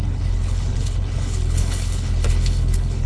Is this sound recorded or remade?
remade